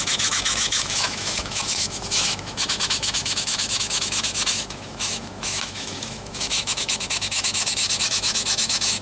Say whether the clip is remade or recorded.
remade